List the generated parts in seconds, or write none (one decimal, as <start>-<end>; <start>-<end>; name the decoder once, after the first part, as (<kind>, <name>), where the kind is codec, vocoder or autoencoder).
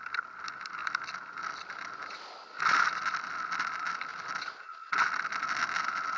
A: none